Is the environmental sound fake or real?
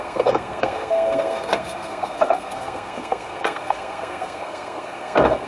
fake